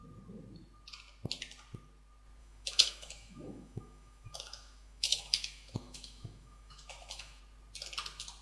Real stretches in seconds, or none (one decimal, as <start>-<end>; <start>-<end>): 0.0-2.4; 7.4-8.4